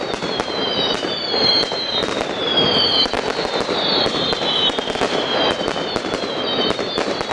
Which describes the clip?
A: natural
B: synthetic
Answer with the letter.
B